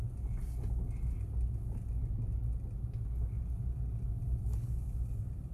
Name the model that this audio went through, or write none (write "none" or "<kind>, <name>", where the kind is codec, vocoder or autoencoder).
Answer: none